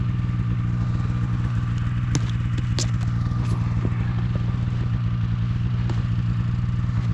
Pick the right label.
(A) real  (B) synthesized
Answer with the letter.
A